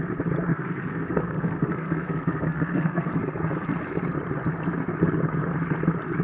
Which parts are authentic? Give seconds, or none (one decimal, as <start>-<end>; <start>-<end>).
0.0-0.5; 3.1-6.2